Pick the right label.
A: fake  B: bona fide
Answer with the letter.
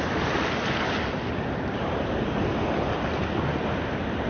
B